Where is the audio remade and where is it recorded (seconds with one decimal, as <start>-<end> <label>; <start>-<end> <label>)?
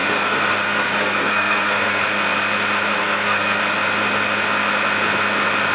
0.0-2.0 remade; 2.0-3.0 recorded; 3.0-3.6 remade; 3.6-5.7 recorded